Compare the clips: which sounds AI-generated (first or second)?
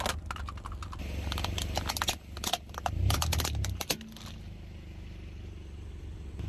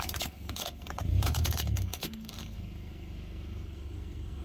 second